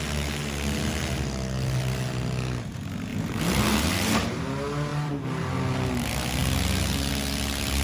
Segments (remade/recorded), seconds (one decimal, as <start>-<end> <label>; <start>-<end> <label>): 0.0-3.1 recorded; 3.1-4.4 remade; 4.4-4.9 recorded; 4.9-5.5 remade; 5.5-7.8 recorded